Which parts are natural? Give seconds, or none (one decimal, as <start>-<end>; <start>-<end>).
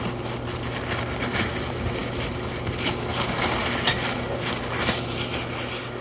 0.0-6.0